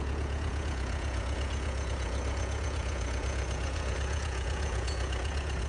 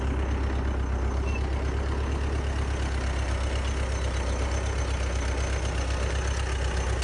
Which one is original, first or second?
second